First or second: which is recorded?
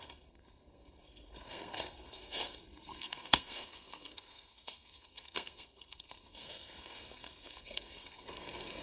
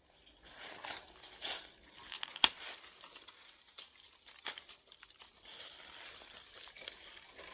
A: second